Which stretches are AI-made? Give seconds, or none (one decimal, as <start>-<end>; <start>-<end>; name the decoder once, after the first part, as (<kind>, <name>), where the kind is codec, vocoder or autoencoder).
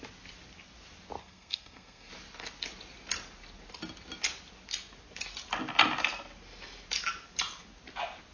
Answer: 1.2-2.1 (codec, SNAC)